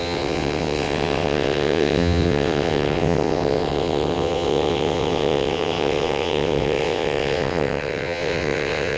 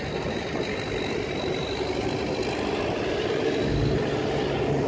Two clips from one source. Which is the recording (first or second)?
second